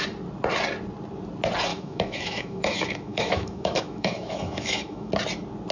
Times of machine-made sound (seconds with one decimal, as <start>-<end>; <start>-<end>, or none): 1.7-5.1